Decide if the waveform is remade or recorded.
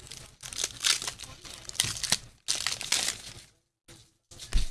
recorded